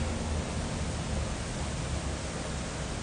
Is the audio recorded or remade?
recorded